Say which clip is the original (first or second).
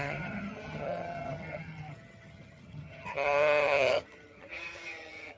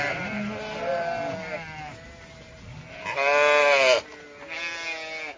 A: second